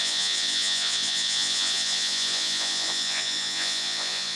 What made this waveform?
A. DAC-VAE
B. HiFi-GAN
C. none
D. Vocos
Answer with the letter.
D